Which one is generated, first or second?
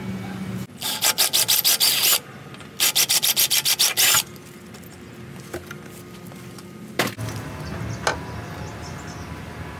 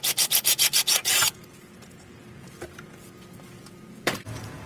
second